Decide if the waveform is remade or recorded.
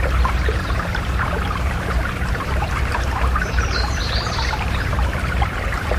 remade